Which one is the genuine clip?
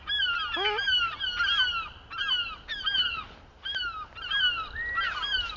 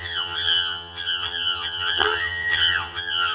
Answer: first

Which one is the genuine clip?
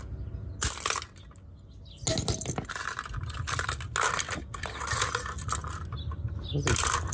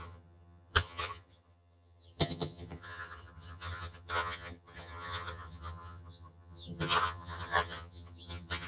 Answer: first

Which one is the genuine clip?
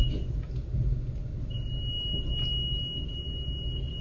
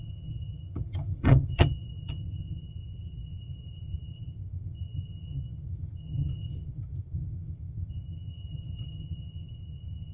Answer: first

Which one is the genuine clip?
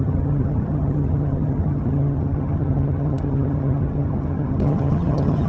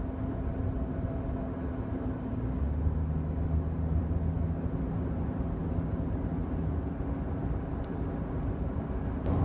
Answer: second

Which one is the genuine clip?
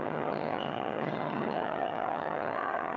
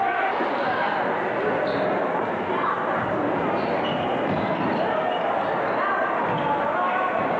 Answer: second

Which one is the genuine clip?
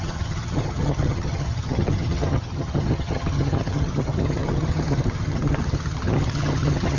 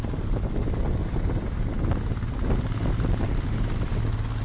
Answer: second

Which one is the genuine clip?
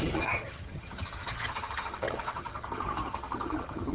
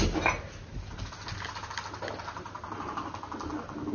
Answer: second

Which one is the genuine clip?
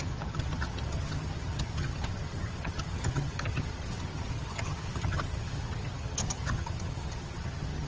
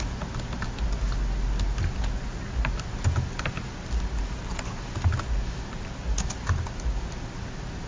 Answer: second